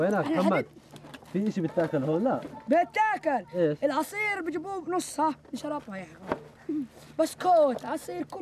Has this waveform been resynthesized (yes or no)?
no